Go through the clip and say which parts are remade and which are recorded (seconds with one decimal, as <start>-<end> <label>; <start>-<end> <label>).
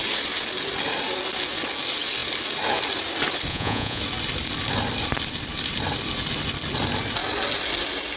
0.0-3.5 recorded; 3.5-4.0 remade; 4.0-8.2 recorded